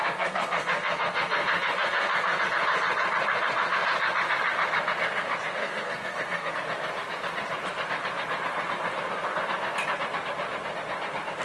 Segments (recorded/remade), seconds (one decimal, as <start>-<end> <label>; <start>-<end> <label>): 0.0-2.4 remade; 2.4-5.6 recorded; 5.6-6.5 remade; 6.5-11.4 recorded